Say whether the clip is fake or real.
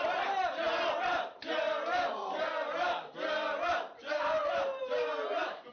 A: real